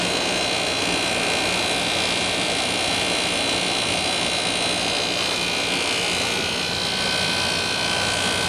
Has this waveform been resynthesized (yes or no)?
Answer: no